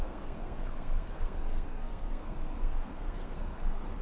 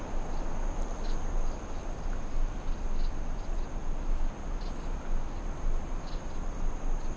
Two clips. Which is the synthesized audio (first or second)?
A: first